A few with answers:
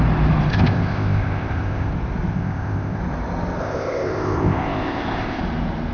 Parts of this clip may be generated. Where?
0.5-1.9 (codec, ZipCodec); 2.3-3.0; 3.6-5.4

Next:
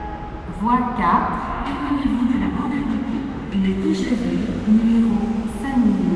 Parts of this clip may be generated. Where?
1.4-5.1 (autoencoder, DAC-VAE)